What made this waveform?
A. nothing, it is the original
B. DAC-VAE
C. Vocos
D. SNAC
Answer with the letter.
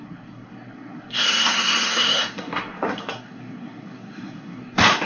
D